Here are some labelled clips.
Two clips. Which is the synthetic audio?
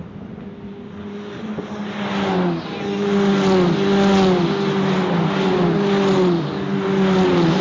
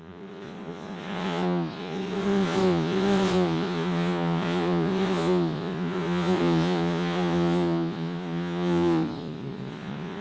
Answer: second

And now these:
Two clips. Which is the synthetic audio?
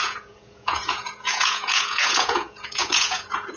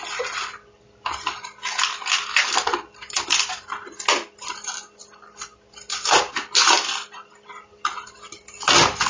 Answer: first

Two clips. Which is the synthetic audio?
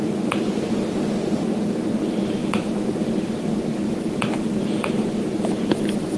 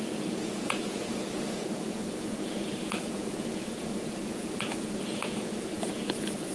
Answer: second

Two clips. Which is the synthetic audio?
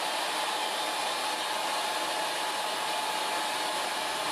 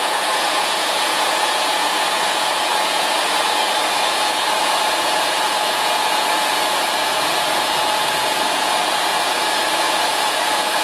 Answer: second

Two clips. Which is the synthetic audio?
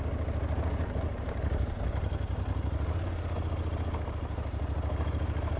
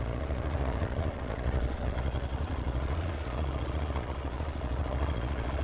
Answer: second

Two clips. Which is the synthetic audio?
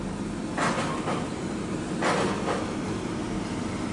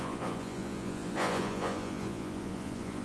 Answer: second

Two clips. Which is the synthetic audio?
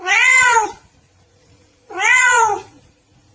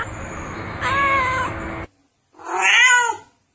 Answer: first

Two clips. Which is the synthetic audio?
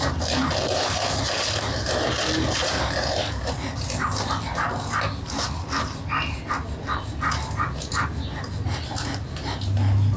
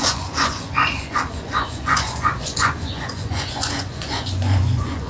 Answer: second